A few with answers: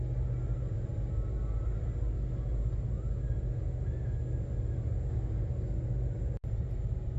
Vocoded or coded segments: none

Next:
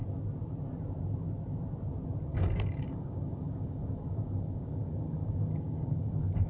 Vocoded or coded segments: 2.3-6.5 (codec, DAC)

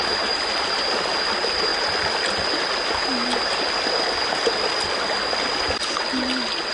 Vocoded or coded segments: none

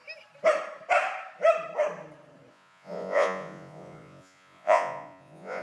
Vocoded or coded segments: 2.5-5.6 (vocoder, Vocos)

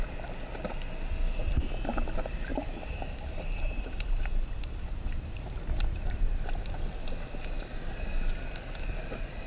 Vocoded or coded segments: 2.5-6.6 (vocoder, BigVGAN v2)

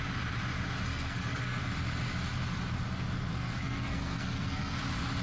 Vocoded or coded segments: 0.9-1.6 (codec, SNAC); 3.3-4.8

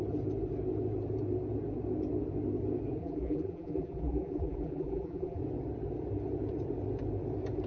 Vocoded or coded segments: 3.0-5.4 (vocoder, BigVGAN v2)